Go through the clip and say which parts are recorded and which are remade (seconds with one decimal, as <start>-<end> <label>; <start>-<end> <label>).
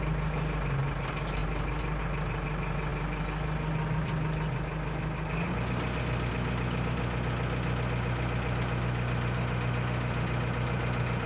0.0-11.3 recorded